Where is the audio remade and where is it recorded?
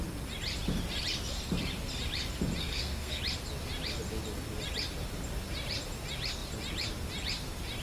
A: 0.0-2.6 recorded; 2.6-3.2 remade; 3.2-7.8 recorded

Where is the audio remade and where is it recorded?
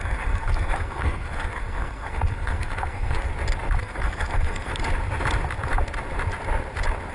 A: 0.0-3.3 remade; 3.3-3.8 recorded; 3.8-4.7 remade; 4.7-7.1 recorded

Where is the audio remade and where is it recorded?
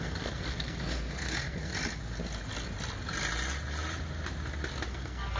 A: 0.0-1.7 remade; 1.7-4.9 recorded; 4.9-5.4 remade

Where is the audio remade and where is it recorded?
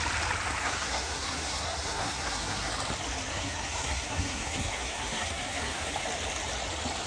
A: 0.0-0.6 recorded; 0.6-2.7 remade; 2.7-3.3 recorded; 3.3-5.9 remade; 5.9-7.1 recorded